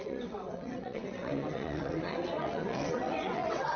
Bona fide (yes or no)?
no